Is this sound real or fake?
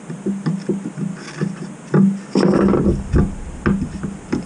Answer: real